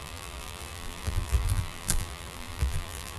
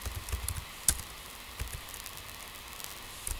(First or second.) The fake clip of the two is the first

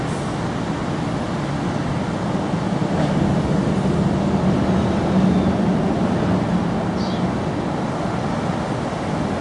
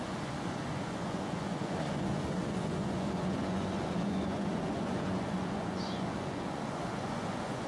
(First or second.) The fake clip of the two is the second